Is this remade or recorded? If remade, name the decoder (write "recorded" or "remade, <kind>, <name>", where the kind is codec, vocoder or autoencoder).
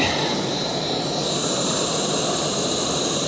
remade, vocoder, BigVGAN v2